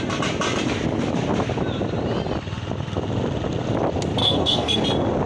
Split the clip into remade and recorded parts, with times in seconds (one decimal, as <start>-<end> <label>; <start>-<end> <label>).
0.0-4.2 recorded; 4.2-4.8 remade; 4.8-5.3 recorded